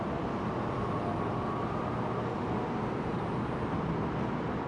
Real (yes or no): yes